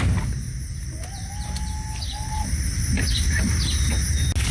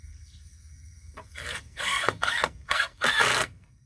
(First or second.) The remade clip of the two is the second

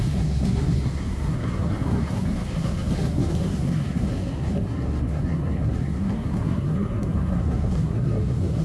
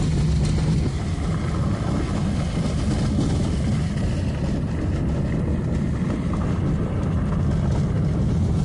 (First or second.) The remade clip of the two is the first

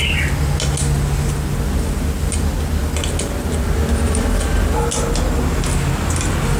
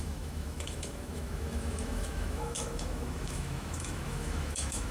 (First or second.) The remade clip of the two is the second